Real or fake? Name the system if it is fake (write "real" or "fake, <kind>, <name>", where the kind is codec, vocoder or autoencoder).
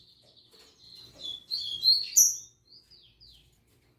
real